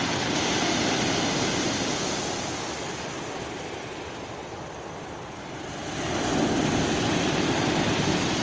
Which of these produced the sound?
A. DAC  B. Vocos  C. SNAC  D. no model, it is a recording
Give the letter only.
D